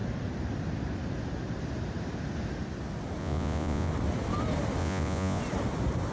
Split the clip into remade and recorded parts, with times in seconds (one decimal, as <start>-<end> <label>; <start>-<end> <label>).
0.0-3.2 recorded; 3.2-3.9 remade; 3.9-4.8 recorded; 4.8-5.4 remade; 5.4-6.1 recorded